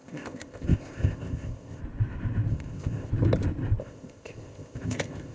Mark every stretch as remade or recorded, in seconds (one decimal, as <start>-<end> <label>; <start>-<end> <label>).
0.0-1.8 remade; 1.8-2.5 recorded; 2.5-3.1 remade; 3.1-3.8 recorded; 3.8-5.3 remade